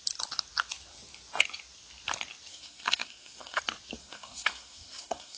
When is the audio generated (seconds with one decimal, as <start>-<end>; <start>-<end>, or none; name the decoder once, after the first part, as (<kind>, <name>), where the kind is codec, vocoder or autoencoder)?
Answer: 2.5-3.6 (codec, SNAC); 4.0-5.4